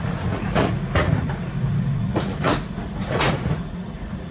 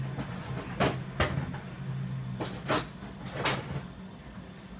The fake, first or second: first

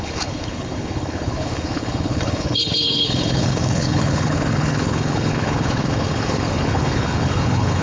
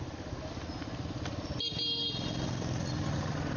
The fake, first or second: first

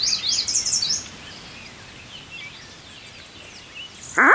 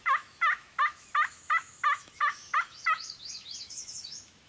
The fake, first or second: second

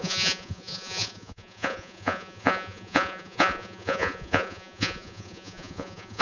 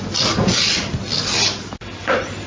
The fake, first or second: first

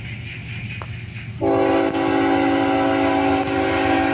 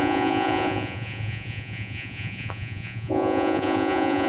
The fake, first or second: second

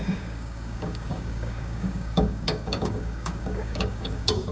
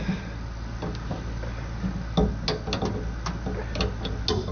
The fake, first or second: first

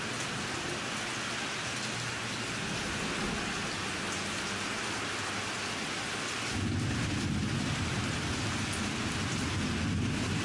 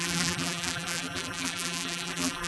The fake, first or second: second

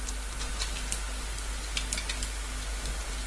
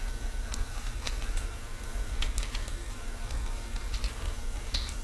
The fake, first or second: second